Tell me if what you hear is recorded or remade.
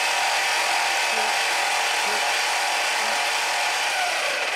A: recorded